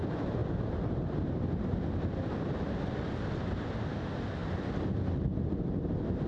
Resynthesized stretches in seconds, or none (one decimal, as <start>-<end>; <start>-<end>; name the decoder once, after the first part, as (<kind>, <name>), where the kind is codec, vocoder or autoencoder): none